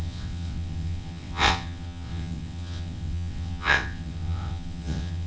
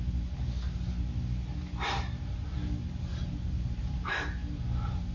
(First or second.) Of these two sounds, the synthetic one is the first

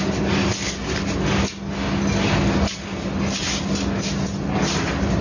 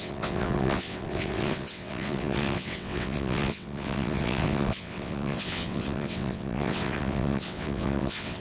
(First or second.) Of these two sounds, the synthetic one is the second